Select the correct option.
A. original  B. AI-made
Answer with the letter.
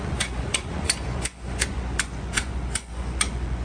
B